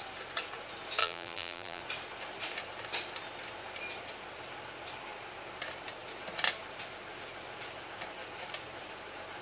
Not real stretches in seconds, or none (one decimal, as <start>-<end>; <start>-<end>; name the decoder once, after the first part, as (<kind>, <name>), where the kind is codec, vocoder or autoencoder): 1.0-1.8 (vocoder, BigVGAN v2)